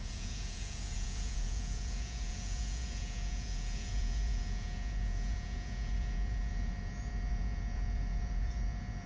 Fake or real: fake